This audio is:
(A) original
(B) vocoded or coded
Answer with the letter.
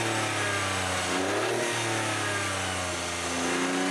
A